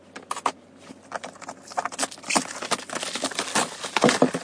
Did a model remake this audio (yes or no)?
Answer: no